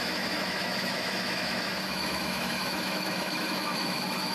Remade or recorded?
remade